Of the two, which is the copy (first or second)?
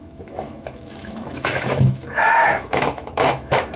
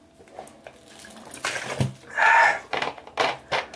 first